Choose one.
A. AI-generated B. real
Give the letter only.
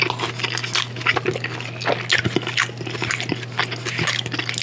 B